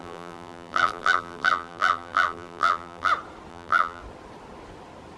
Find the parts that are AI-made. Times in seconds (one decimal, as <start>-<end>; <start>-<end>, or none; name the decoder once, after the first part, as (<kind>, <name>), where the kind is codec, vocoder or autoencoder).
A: 0.0-3.1 (vocoder, BigVGAN v2); 3.5-4.0